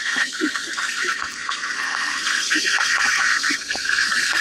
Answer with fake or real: fake